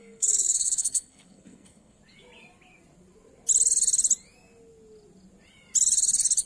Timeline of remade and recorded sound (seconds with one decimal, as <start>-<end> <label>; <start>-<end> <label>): 0.0-2.0 remade; 2.0-6.5 recorded